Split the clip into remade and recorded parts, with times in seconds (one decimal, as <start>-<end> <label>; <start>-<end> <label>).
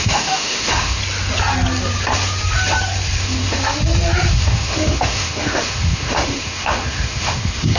0.0-1.0 remade; 1.0-3.2 recorded; 3.2-3.6 remade; 3.6-4.3 recorded; 4.3-7.8 remade